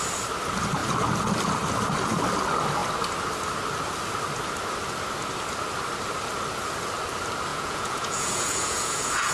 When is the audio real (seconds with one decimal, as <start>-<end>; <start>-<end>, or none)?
0.0-7.5